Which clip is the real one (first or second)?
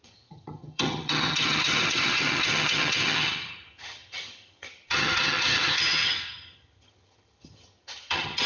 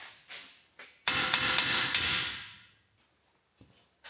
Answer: second